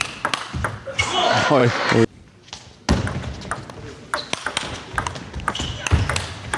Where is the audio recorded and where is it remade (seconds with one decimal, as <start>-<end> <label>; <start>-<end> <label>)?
0.0-6.6 recorded